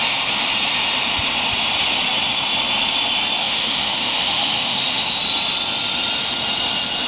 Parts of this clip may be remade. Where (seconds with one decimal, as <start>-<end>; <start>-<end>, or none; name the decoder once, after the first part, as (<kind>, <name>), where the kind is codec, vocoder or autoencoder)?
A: 3.4-5.2 (autoencoder, DAC-VAE)